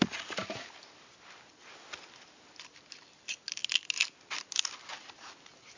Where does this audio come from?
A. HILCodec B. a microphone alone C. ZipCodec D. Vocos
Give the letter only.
B